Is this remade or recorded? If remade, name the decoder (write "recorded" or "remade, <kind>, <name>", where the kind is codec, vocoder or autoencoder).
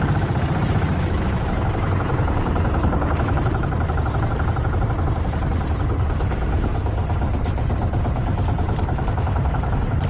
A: remade, vocoder, BigVGAN v2